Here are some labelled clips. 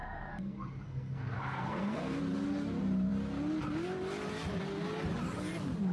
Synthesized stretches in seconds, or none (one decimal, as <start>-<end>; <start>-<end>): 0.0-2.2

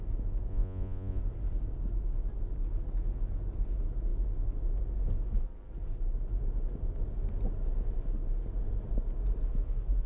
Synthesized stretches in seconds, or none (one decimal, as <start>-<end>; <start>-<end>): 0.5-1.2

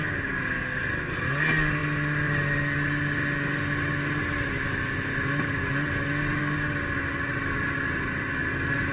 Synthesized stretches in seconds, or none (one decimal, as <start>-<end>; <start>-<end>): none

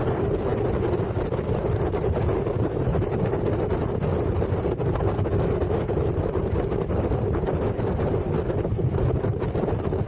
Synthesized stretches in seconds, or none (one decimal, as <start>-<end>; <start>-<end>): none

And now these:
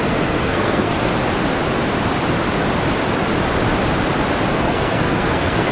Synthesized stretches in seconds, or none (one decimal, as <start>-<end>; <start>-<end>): 0.0-1.1; 4.5-5.7

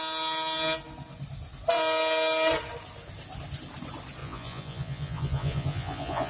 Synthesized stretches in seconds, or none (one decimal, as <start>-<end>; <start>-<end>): 4.2-6.3